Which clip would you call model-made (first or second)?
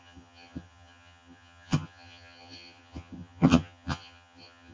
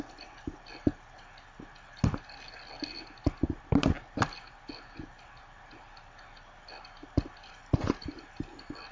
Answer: first